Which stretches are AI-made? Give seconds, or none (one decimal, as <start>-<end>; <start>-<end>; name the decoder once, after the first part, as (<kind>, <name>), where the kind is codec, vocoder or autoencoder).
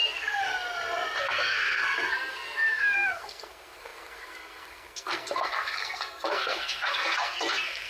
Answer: 0.0-0.5 (codec, SNAC); 1.2-7.9